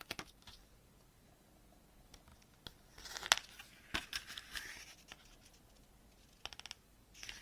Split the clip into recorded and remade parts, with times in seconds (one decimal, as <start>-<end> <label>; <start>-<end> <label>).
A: 0.0-7.4 recorded

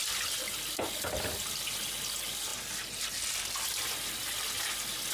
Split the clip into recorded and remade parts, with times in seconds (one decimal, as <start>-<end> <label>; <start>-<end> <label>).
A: 0.0-5.1 recorded

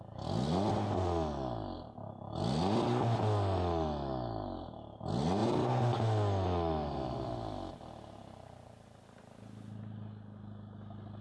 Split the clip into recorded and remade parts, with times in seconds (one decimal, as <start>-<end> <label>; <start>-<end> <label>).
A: 0.0-11.2 recorded

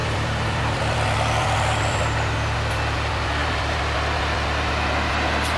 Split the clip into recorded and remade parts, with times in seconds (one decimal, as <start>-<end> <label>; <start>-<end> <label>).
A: 0.0-2.0 remade; 2.0-5.6 recorded

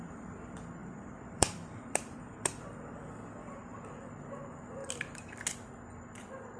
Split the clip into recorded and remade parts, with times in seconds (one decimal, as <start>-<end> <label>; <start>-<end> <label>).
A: 0.0-0.8 recorded; 0.8-3.1 remade; 3.1-6.6 recorded

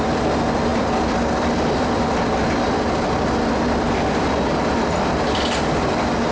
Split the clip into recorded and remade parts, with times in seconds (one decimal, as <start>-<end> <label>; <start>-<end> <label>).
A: 0.0-0.7 recorded; 0.7-4.5 remade; 4.5-6.3 recorded